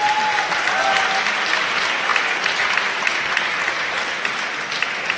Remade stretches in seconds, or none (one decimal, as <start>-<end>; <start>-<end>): none